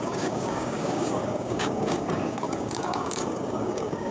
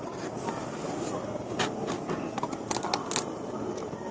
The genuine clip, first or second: second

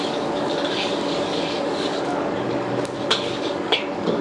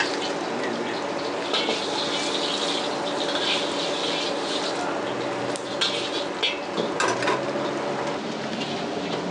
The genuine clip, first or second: second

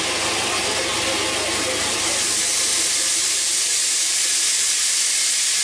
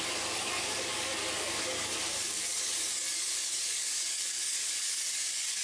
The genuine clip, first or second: first